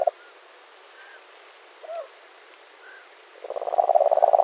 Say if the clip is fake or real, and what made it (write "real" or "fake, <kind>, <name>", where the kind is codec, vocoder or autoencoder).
fake, vocoder, BigVGAN v2